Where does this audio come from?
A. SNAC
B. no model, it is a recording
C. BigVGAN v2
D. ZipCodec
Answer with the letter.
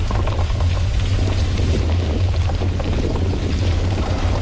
C